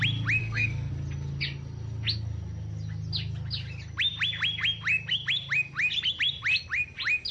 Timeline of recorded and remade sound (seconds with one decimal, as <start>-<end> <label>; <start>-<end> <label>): 0.0-0.4 recorded; 0.4-0.9 remade; 0.9-7.3 recorded